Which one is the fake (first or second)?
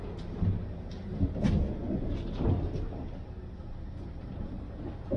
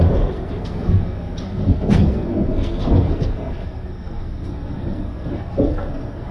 second